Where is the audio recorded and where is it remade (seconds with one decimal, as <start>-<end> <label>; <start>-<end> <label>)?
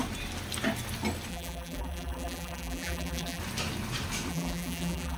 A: 0.0-1.3 recorded; 1.3-3.4 remade; 3.4-4.3 recorded; 4.3-5.2 remade